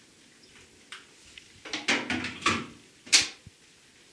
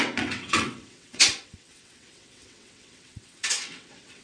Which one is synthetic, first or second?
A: second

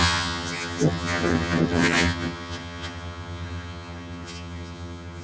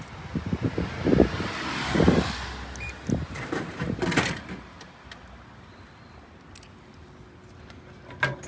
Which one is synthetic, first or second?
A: first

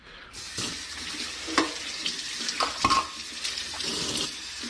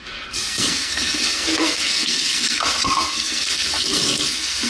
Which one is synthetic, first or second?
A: second